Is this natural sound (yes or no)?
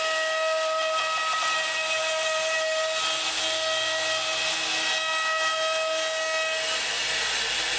yes